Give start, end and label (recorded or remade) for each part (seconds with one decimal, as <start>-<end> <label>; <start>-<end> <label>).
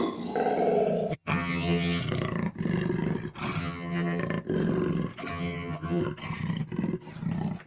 0.0-1.1 recorded; 1.1-2.0 remade; 2.0-3.6 recorded; 3.6-4.2 remade; 4.2-5.3 recorded; 5.3-6.0 remade; 6.0-7.7 recorded